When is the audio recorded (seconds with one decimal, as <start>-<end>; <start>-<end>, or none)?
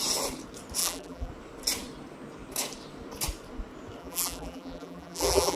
0.0-0.8; 1.3-4.0